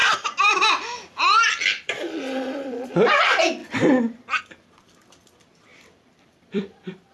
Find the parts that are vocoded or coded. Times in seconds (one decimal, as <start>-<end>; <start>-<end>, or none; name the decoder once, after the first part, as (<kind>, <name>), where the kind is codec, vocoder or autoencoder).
0.7-7.1 (vocoder, BigVGAN v2)